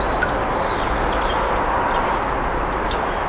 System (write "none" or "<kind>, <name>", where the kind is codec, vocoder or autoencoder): none